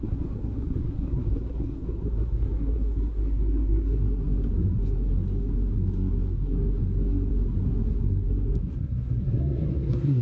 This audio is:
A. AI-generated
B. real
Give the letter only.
A